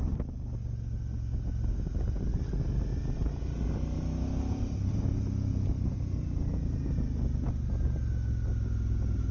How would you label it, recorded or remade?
recorded